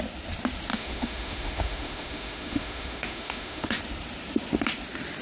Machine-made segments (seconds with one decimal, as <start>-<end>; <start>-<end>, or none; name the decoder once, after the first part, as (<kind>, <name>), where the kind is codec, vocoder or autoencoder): 0.7-3.8 (autoencoder, DAC-VAE)